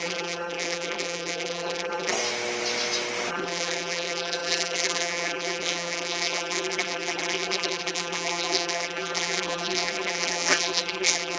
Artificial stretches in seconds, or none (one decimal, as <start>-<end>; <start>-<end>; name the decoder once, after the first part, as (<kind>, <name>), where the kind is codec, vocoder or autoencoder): 0.0-2.1 (vocoder, BigVGAN v2); 3.3-11.4